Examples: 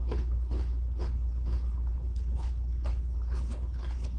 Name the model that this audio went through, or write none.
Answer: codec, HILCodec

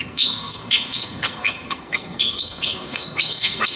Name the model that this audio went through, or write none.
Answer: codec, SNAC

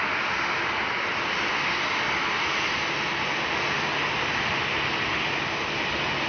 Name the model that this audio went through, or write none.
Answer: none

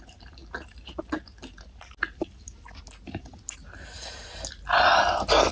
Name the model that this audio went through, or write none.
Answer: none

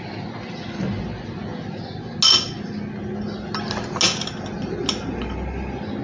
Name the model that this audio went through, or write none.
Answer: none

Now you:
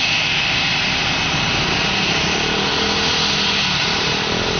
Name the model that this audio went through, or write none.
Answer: none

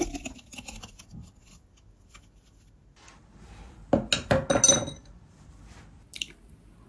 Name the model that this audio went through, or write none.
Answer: none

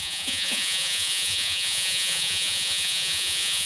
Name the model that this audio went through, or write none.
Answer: vocoder, Vocos